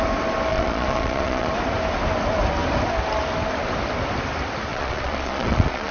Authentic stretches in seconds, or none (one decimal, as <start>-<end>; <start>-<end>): 0.0-0.5; 1.5-4.7